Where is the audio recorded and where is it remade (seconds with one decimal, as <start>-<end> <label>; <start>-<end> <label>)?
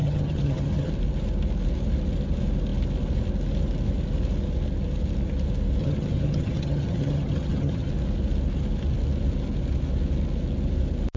0.0-0.9 remade; 0.9-5.8 recorded; 5.8-7.9 remade; 7.9-11.2 recorded